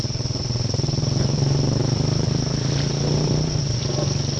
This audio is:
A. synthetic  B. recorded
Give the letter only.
A